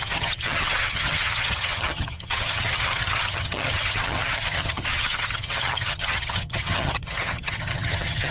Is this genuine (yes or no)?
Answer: no